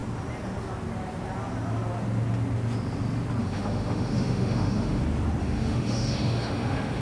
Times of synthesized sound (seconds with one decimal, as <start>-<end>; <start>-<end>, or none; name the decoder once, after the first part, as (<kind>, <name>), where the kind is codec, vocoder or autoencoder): 3.4-5.0 (autoencoder, DAC-VAE); 5.4-7.0